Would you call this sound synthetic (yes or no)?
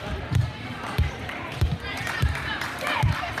yes